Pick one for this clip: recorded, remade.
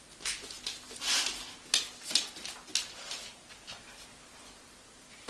recorded